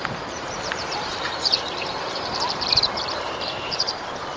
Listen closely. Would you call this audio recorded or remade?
remade